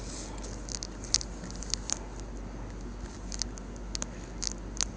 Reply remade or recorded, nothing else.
recorded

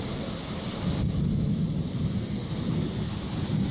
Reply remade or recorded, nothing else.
recorded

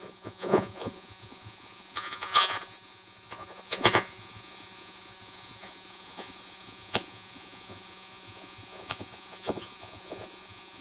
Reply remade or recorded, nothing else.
remade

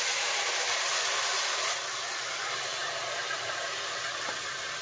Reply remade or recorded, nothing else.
recorded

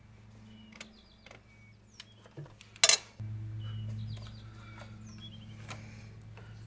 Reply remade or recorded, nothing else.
recorded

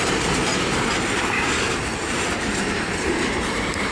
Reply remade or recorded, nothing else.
remade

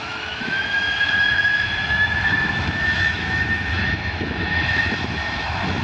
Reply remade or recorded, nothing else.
remade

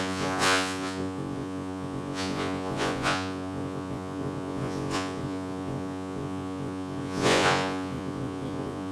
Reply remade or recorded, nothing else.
remade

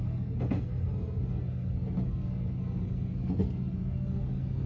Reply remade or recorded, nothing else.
remade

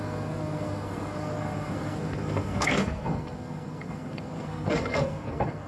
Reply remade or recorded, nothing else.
remade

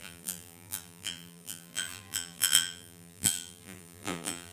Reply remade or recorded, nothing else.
remade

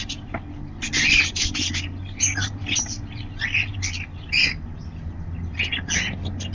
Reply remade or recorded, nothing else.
recorded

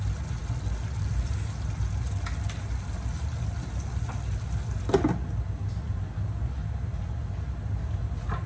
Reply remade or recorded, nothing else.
recorded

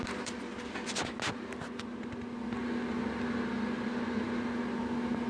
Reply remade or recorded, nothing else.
recorded